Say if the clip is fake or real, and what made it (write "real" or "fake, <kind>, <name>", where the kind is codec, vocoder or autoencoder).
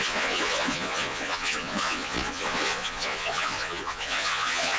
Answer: fake, vocoder, Vocos